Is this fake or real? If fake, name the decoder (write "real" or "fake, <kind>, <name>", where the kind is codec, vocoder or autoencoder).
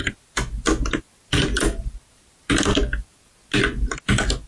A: real